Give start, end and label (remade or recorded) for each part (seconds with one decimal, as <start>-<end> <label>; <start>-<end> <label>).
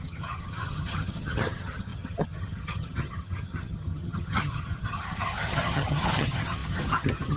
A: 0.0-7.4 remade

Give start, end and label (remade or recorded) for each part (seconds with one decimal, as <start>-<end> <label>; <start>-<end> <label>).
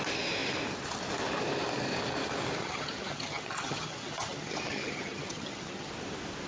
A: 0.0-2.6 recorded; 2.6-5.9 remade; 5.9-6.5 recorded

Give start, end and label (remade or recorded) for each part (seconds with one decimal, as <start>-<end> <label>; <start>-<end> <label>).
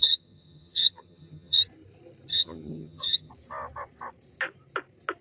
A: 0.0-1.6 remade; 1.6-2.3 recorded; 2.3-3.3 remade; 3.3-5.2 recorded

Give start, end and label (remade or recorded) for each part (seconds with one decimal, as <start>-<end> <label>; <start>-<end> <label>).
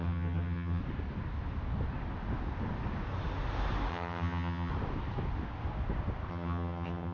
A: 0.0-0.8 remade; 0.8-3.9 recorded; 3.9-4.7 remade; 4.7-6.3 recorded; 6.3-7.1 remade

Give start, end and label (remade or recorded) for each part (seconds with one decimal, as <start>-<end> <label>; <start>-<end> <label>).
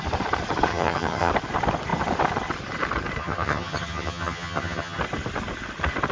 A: 0.0-0.7 recorded; 0.7-1.3 remade; 1.3-3.2 recorded; 3.2-5.0 remade; 5.0-6.1 recorded